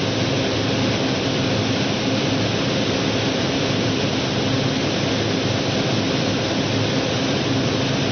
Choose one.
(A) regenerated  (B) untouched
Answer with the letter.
B